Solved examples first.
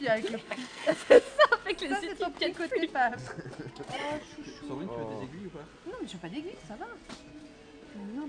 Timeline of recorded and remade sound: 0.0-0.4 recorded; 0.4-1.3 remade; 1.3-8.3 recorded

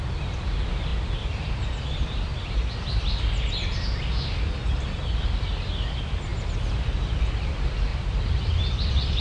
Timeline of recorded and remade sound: 0.0-9.2 recorded

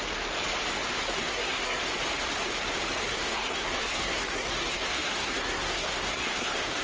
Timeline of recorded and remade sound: 0.0-1.2 recorded; 1.2-1.8 remade; 1.8-3.1 recorded; 3.1-6.8 remade

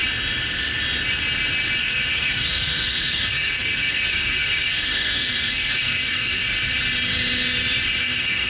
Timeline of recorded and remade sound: 0.0-1.8 recorded; 1.8-6.4 remade; 6.4-8.0 recorded; 8.0-8.5 remade

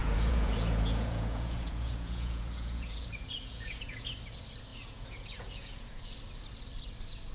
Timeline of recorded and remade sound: 0.0-4.1 remade; 4.1-4.7 recorded; 4.7-6.0 remade; 6.0-7.3 recorded